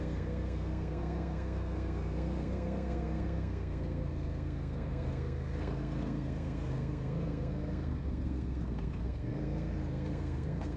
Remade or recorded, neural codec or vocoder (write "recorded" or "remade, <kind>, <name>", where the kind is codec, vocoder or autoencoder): remade, codec, SNAC